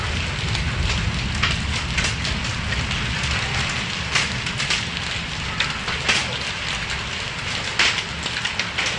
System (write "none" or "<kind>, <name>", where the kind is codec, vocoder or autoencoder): none